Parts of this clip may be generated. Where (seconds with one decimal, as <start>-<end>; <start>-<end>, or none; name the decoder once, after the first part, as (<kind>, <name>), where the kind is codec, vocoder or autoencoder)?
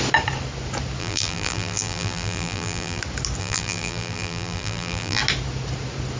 1.0-3.0 (vocoder, BigVGAN v2); 3.4-5.2